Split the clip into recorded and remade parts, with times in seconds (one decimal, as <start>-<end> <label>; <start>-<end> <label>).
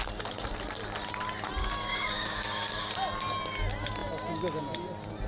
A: 0.0-1.6 recorded; 1.6-2.9 remade; 2.9-5.3 recorded